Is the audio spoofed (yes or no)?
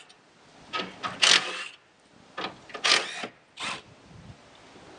no